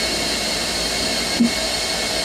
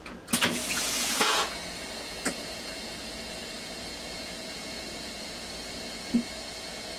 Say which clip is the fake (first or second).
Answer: second